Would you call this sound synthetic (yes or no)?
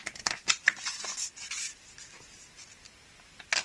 no